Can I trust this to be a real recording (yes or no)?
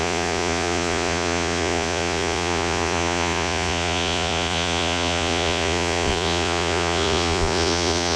no